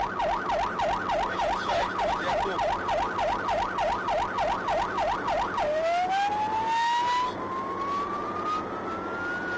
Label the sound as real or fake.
real